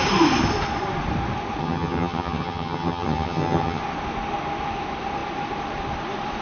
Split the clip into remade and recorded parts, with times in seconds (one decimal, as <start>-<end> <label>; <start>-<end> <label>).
0.0-1.6 recorded; 1.6-3.8 remade; 3.8-6.4 recorded